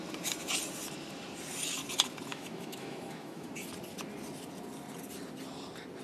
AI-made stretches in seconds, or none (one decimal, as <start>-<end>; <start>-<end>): 2.3-3.5